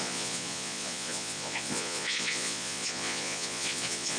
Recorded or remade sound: remade